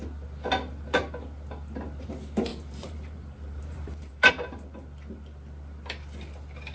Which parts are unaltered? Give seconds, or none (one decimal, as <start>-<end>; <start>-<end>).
0.0-2.5; 4.3-6.7

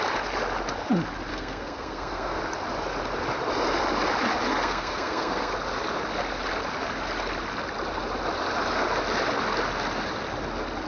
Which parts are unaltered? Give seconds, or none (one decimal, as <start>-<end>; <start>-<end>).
0.0-1.3; 2.4-4.5; 5.5-10.9

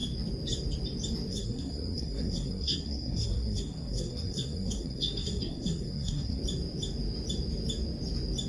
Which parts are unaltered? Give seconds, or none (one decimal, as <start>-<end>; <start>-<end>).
0.0-1.3; 6.4-8.5

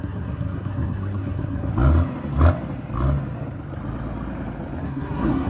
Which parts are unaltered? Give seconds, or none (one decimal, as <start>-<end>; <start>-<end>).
1.7-4.8

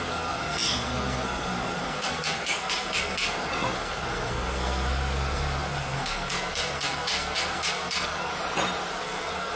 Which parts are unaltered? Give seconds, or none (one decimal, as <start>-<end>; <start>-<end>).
8.3-8.9

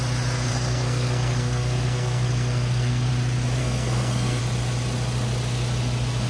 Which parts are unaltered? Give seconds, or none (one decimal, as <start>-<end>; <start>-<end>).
0.0-0.5; 3.1-3.6; 4.4-6.3

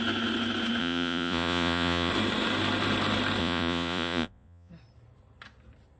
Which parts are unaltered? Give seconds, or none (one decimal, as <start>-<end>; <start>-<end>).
0.0-0.8; 2.1-3.4; 4.7-6.0